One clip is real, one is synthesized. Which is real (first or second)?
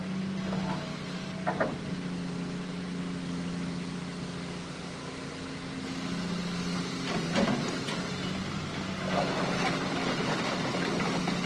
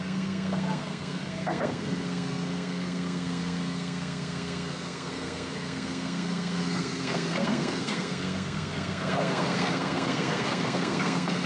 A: first